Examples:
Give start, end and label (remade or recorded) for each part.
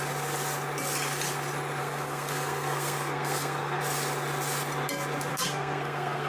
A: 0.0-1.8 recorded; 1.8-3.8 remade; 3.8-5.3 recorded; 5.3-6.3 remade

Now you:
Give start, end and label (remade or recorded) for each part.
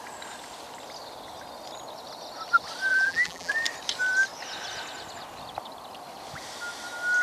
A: 0.0-2.9 recorded; 2.9-3.5 remade; 3.5-7.2 recorded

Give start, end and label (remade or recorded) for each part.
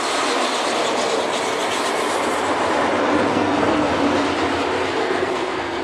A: 0.0-3.3 recorded; 3.3-3.9 remade; 3.9-5.0 recorded; 5.0-5.8 remade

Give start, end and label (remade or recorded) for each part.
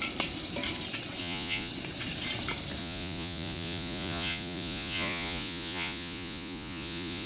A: 0.0-1.2 recorded; 1.2-1.7 remade; 1.7-2.8 recorded; 2.8-7.3 remade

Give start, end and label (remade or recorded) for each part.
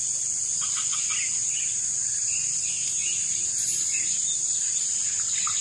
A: 0.0-5.6 recorded